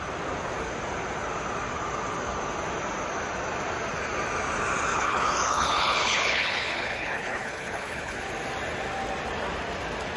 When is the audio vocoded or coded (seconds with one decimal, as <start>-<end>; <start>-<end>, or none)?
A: 4.9-8.3